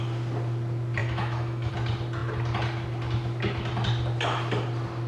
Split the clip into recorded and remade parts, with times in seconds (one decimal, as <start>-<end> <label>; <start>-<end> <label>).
0.0-1.0 recorded; 1.0-1.7 remade; 1.7-5.1 recorded